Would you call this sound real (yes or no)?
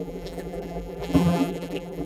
no